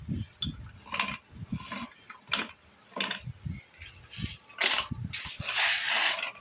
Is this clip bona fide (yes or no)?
yes